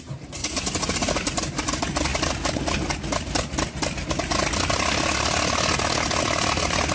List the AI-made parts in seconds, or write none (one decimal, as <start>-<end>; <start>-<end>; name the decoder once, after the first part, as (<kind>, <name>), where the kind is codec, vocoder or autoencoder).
none